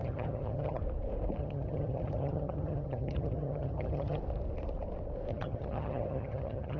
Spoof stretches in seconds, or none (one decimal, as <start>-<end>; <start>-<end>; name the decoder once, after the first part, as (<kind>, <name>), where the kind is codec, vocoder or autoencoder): 0.0-0.8 (vocoder, HiFi-GAN); 1.4-4.2; 5.3-6.8